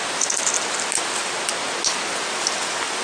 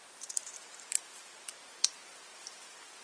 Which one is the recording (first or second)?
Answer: first